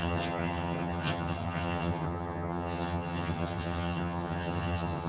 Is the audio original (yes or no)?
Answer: no